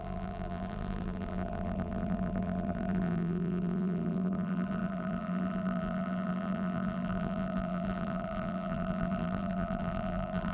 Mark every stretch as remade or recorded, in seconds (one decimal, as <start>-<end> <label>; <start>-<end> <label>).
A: 0.0-10.5 remade